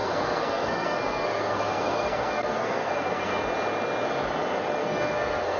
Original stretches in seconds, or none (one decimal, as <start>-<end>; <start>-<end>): 3.4-4.8